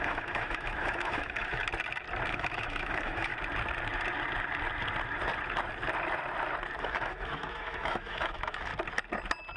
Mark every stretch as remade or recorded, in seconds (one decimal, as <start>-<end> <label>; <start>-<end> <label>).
0.0-1.6 remade; 1.6-2.3 recorded; 2.3-3.3 remade; 3.3-6.8 recorded; 6.8-8.7 remade; 8.7-9.6 recorded